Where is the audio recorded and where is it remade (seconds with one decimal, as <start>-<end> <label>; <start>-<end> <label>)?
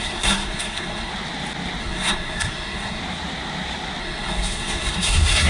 0.0-1.1 remade; 1.1-1.8 recorded; 1.8-3.0 remade; 3.0-4.0 recorded; 4.0-5.5 remade